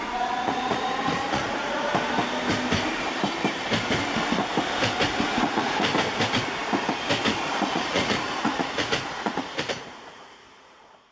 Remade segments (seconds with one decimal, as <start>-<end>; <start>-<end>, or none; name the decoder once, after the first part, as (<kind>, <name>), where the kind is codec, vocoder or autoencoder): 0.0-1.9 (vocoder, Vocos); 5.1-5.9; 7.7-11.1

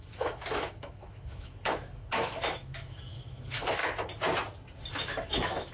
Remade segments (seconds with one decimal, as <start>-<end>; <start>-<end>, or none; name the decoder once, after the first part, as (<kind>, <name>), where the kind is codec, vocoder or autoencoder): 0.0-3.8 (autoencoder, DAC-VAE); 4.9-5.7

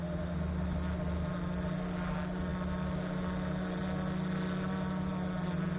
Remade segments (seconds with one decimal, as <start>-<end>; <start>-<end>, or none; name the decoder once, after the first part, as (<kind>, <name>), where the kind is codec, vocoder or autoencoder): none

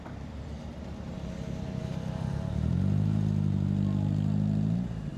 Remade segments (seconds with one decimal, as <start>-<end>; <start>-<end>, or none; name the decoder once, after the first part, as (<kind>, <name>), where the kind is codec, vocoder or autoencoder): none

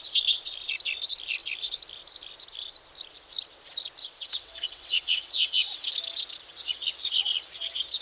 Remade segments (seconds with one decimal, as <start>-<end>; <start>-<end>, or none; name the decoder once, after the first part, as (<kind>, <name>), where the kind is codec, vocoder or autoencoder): 4.0-5.9 (vocoder, WaveNeXt)

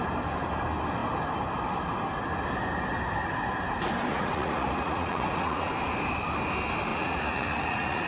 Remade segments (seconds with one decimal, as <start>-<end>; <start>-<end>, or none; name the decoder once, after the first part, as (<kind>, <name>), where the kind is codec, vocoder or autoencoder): 4.1-5.7 (vocoder, Vocos); 6.9-8.1

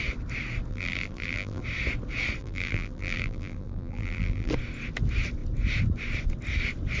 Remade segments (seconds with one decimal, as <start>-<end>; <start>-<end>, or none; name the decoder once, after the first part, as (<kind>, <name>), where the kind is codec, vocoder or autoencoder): 0.7-1.6 (vocoder, BigVGAN v2); 2.4-4.5

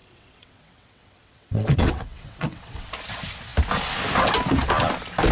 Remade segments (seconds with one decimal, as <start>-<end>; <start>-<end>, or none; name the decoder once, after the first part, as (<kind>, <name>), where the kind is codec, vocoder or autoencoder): 0.0-2.9 (vocoder, WaveNeXt)